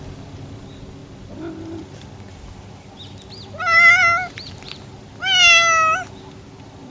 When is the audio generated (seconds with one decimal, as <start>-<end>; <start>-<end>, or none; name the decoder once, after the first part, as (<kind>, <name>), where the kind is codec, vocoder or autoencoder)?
none